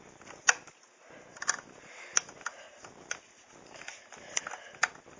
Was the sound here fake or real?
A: real